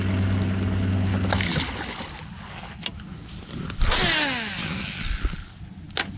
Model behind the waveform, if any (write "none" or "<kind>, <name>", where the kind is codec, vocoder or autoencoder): none